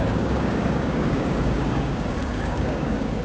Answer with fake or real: fake